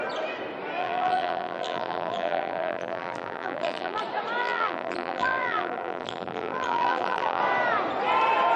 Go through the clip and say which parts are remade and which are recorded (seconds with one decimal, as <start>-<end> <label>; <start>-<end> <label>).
0.0-0.8 recorded; 0.8-4.0 remade; 4.0-4.4 recorded; 4.4-7.4 remade; 7.4-8.6 recorded